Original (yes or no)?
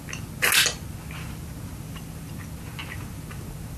yes